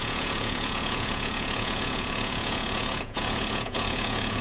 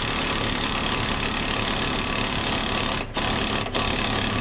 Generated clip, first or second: first